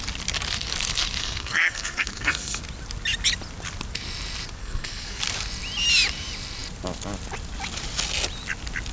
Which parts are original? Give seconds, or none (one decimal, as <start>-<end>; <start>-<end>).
0.0-1.2; 2.6-4.6; 5.2-8.9